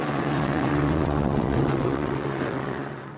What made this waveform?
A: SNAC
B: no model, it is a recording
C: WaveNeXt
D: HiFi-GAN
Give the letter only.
C